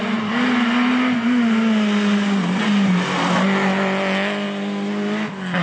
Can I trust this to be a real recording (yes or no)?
yes